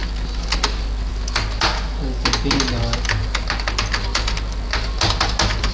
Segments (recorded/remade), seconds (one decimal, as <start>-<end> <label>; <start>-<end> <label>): 0.0-5.7 recorded